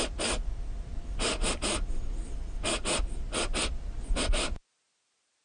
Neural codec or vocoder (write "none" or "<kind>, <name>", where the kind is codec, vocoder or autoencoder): none